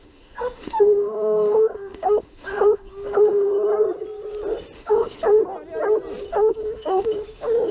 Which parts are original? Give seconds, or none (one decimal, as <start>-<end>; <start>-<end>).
3.5-4.8; 5.4-6.3